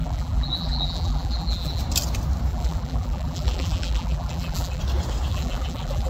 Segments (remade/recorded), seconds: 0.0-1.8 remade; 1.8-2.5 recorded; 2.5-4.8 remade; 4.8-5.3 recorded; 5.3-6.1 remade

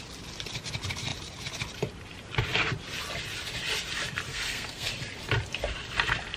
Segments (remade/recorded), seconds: 0.0-4.3 recorded; 4.3-4.9 remade; 4.9-6.4 recorded

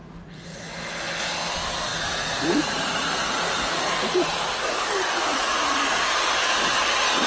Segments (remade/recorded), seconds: 0.0-0.7 remade; 0.7-1.9 recorded; 1.9-4.5 remade; 4.5-5.3 recorded; 5.3-5.8 remade; 5.8-7.3 recorded

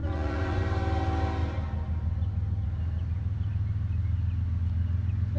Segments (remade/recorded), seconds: 0.0-0.6 remade; 0.6-5.4 recorded

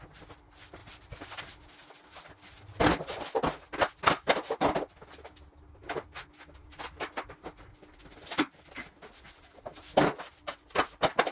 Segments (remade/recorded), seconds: 0.0-11.3 recorded